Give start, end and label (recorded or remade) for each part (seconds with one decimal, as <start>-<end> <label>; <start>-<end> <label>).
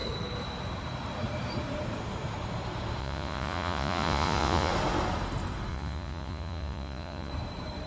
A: 0.0-3.0 recorded; 3.0-4.7 remade; 4.7-5.7 recorded; 5.7-7.3 remade; 7.3-7.9 recorded